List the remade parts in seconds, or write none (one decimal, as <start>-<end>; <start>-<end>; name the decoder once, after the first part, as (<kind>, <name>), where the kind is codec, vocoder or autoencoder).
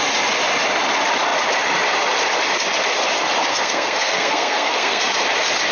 3.5-5.0 (codec, SNAC)